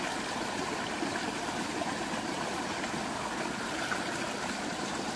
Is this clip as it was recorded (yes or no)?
yes